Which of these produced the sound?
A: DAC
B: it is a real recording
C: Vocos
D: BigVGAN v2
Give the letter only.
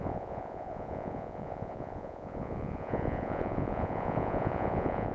C